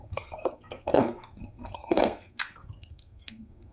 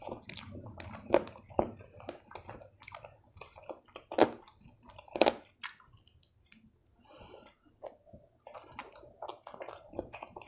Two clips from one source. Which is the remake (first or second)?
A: first